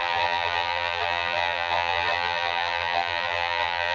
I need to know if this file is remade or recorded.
remade